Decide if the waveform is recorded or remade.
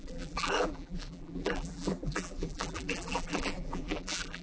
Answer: remade